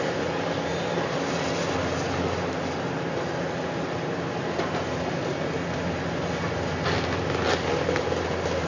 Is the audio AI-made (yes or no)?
no